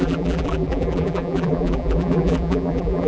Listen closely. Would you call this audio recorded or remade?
remade